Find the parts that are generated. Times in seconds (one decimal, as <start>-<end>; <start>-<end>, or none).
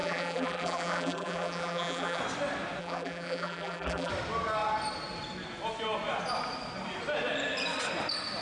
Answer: 0.0-2.2; 2.8-4.1